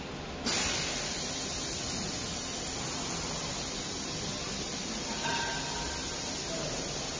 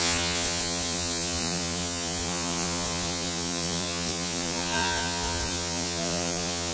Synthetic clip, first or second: second